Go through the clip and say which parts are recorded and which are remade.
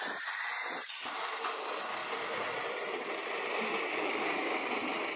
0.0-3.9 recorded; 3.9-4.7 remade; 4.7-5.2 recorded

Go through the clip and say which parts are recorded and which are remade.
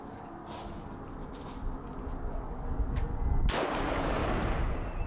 0.0-0.4 remade; 0.4-2.3 recorded; 2.3-3.1 remade; 3.1-3.8 recorded; 3.8-4.2 remade; 4.2-5.1 recorded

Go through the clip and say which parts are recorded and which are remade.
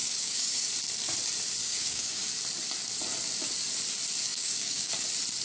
0.0-0.7 remade; 0.7-1.6 recorded; 1.6-2.3 remade; 2.3-4.3 recorded; 4.3-4.9 remade; 4.9-5.4 recorded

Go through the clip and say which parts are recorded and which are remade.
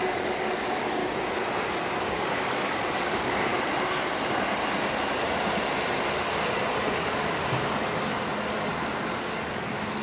0.0-1.0 remade; 1.0-2.0 recorded; 2.0-3.5 remade; 3.5-6.9 recorded; 6.9-7.4 remade; 7.4-8.7 recorded; 8.7-10.0 remade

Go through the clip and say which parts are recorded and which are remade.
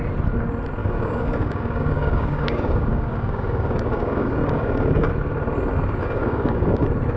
0.0-0.8 recorded; 0.8-5.1 remade; 5.1-6.0 recorded; 6.0-6.8 remade; 6.8-7.2 recorded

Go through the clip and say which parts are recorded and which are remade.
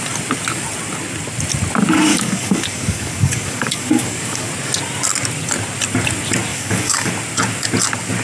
0.0-2.1 recorded; 2.1-4.5 remade; 4.5-6.5 recorded; 6.5-7.1 remade; 7.1-8.2 recorded